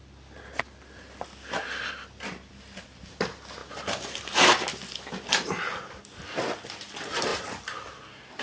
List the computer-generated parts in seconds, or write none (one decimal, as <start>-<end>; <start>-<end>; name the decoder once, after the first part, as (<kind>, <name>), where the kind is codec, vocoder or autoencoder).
0.0-2.5 (vocoder, BigVGAN v2); 7.3-8.4